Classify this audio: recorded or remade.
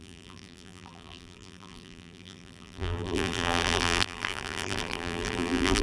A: remade